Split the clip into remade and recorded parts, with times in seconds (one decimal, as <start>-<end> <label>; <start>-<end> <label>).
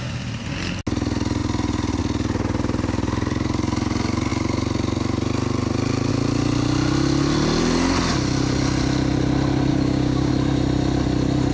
0.0-9.7 recorded; 9.7-10.3 remade; 10.3-11.5 recorded